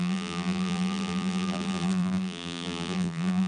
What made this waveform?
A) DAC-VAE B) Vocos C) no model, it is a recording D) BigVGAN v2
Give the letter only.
D